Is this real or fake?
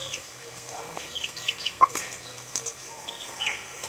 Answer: fake